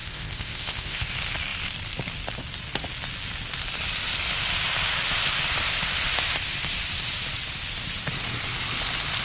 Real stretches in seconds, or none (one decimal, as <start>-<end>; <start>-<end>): 1.1-9.2